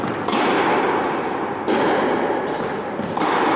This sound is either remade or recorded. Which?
recorded